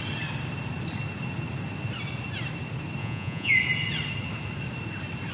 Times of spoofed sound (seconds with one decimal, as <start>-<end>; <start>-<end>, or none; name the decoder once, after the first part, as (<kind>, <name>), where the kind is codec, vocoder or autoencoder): 3.0-3.5 (vocoder, Vocos)